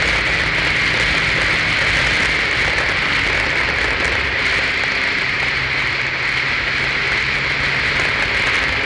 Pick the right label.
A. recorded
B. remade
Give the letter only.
A